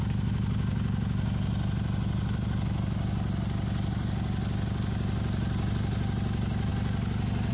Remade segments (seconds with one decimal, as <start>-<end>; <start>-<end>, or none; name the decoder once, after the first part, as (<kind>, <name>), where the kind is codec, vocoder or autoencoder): none